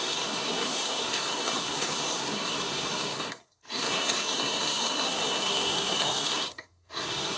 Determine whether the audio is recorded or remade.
remade